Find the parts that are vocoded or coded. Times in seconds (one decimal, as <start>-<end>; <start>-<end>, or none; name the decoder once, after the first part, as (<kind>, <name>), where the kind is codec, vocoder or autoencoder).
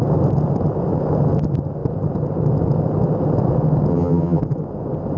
3.9-4.4 (vocoder, HiFi-GAN)